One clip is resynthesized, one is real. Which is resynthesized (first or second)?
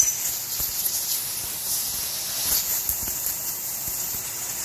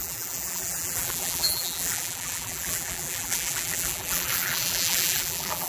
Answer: second